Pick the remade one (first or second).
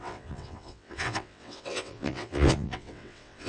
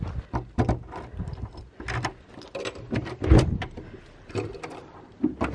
first